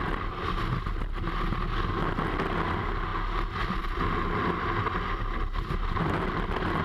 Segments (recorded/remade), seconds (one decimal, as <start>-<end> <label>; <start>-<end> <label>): 0.0-6.8 recorded